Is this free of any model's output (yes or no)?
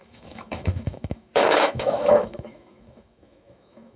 no